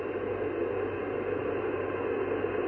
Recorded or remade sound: recorded